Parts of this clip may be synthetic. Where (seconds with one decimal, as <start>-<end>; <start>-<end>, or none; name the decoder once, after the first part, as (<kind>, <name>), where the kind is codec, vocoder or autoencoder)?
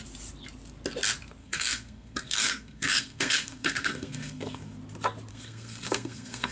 1.4-4.8 (codec, SNAC); 5.3-6.5